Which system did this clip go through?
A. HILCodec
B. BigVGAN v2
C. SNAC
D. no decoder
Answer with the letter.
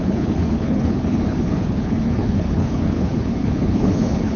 A